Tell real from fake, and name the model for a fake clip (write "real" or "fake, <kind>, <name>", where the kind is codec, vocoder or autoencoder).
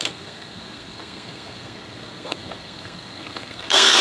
fake, codec, SNAC